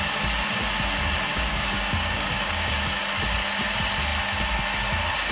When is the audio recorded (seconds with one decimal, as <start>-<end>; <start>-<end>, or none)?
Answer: 0.0-1.3; 3.0-5.3